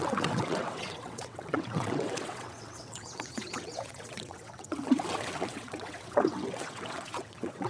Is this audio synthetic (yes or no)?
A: yes